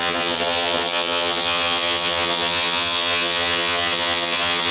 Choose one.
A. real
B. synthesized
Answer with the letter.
B